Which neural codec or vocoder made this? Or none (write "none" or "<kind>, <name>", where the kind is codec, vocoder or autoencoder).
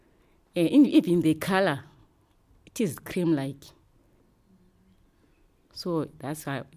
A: none